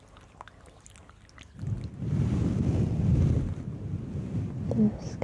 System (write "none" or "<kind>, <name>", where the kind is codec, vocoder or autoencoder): none